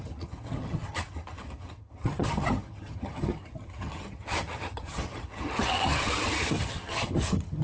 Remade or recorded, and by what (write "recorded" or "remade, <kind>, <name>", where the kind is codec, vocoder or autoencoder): remade, vocoder, HiFi-GAN